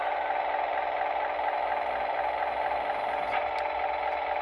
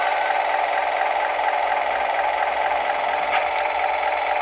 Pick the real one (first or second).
first